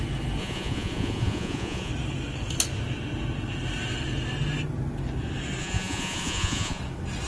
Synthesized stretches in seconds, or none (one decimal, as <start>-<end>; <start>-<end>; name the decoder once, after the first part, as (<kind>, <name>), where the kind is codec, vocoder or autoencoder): 0.4-1.9 (vocoder, Vocos); 5.6-6.8